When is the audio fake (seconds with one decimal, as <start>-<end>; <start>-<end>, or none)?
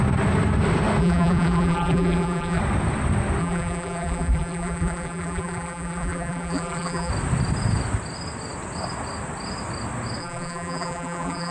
1.0-2.6; 3.4-7.1; 10.2-11.5